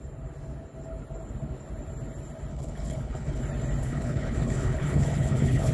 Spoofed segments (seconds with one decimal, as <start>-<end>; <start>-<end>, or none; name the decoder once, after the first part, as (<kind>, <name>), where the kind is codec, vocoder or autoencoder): 2.5-3.4 (codec, HILCodec); 3.8-5.7